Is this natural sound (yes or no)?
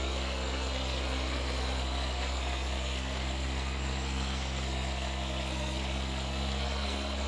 no